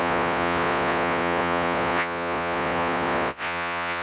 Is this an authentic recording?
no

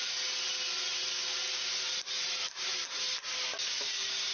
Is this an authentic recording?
yes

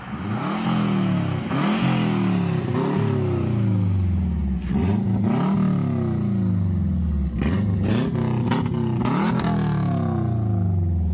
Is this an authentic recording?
yes